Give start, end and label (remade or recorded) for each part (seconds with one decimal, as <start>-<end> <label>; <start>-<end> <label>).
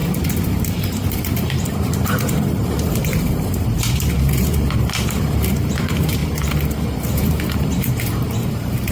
0.0-0.5 recorded; 0.5-6.2 remade; 6.2-6.8 recorded; 6.8-8.9 remade